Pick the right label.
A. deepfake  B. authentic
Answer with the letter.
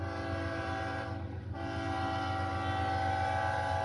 B